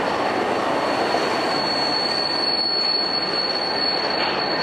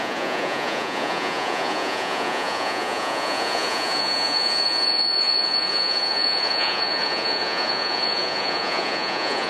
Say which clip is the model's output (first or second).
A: second